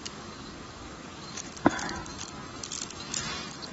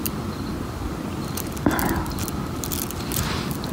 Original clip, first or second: second